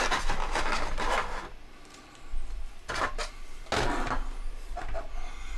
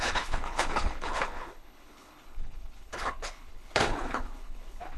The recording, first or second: first